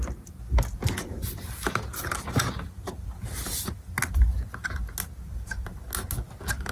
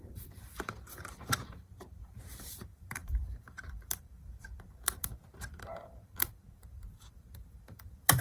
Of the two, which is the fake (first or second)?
second